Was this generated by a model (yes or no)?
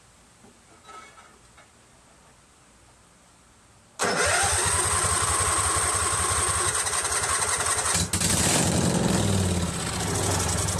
no